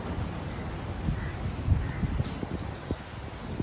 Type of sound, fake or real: real